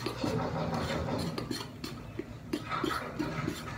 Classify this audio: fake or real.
real